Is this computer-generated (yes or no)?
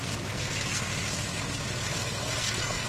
yes